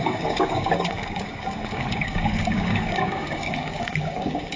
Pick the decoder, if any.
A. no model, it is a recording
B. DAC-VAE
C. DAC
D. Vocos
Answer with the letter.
C